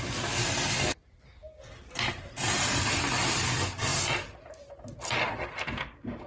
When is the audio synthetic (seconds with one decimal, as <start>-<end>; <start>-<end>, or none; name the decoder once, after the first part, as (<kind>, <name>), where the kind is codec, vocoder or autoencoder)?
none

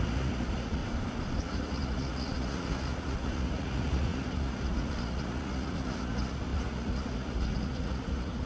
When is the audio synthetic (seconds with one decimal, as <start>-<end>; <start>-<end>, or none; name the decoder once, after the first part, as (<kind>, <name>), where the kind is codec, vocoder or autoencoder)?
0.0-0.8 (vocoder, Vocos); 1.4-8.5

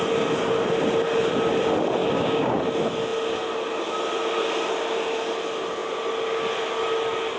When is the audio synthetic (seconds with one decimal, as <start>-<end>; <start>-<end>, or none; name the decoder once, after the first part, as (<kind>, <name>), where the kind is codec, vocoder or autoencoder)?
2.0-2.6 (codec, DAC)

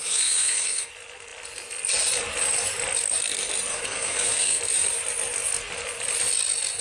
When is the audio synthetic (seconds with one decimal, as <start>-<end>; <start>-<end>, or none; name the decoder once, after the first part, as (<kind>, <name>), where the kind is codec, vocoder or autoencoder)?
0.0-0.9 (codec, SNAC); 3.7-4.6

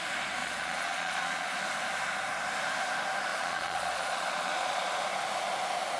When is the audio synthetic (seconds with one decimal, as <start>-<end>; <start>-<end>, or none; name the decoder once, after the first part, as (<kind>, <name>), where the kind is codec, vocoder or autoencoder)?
0.4-1.5 (vocoder, Vocos); 3.3-4.8